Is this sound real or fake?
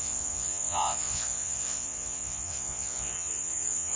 fake